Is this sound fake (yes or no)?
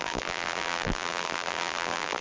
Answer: yes